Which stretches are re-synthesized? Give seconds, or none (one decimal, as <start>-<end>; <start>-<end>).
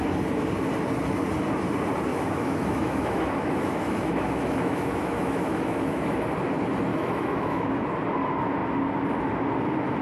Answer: 2.1-6.2; 6.9-7.7